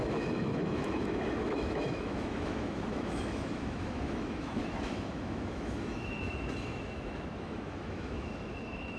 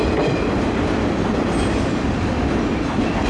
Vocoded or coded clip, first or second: first